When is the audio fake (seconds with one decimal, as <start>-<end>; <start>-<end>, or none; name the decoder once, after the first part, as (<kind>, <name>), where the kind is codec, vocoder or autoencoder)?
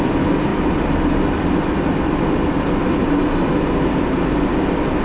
none